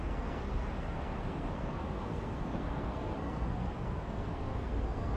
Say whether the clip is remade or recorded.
remade